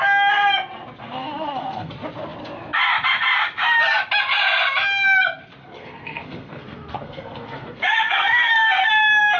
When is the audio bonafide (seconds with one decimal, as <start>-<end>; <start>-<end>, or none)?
0.0-1.0; 1.9-5.6; 8.9-9.4